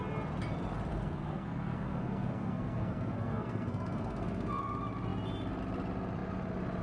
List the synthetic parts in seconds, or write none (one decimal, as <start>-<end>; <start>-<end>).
0.9-4.6